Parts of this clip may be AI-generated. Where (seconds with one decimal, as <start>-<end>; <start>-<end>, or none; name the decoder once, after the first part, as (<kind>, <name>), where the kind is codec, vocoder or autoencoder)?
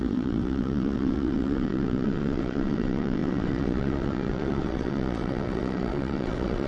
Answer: 0.0-6.7 (vocoder, WaveNeXt)